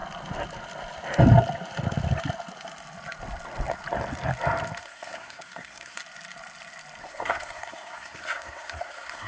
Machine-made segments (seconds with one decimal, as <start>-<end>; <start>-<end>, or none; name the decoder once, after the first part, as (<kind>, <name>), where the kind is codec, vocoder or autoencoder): 4.8-6.0 (codec, SNAC); 7.0-9.3